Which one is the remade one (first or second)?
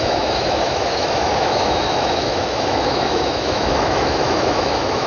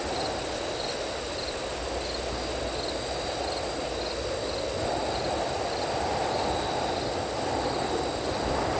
first